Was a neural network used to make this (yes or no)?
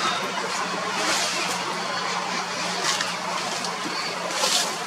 no